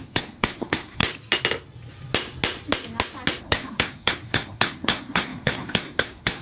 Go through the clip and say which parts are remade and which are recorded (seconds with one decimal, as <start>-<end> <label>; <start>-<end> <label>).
0.0-1.0 remade; 1.0-3.4 recorded; 3.4-6.4 remade